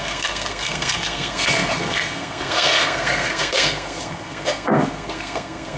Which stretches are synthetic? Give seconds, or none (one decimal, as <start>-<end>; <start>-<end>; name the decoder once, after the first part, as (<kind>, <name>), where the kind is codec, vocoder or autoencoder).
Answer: 0.0-5.8 (codec, SNAC)